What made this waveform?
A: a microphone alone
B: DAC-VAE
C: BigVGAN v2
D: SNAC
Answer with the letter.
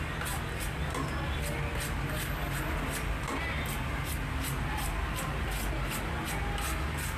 A